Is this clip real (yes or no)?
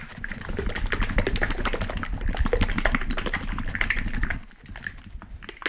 yes